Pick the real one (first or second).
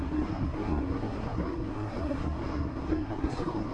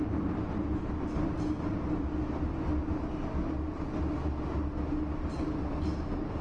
second